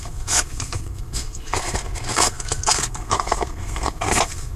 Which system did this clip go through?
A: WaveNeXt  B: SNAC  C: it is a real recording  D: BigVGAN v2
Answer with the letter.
B